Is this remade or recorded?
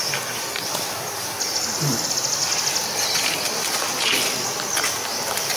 recorded